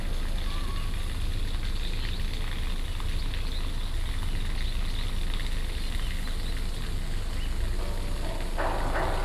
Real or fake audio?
real